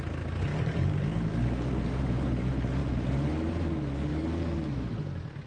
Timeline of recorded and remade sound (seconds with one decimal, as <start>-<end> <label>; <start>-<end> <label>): 0.0-0.5 recorded; 0.5-2.2 remade; 2.2-4.1 recorded; 4.1-4.7 remade; 4.7-5.5 recorded